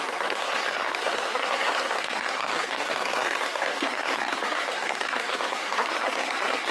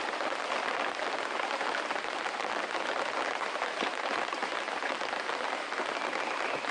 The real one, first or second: second